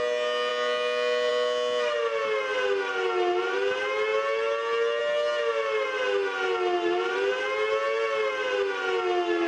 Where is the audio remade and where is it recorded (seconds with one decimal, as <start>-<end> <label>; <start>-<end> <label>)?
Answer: 0.0-9.5 recorded